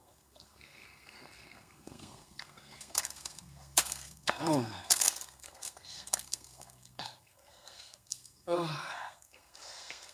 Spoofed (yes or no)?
yes